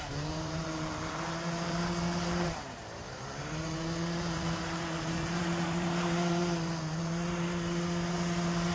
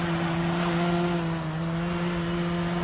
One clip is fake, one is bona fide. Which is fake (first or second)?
first